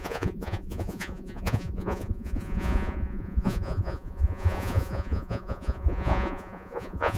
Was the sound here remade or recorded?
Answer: remade